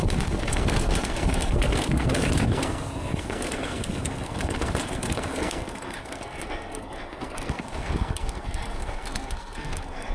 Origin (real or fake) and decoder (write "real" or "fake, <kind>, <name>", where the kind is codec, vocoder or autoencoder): fake, codec, SNAC